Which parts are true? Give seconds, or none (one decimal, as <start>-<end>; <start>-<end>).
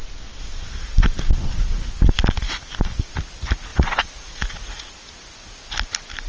0.0-3.7; 4.9-6.3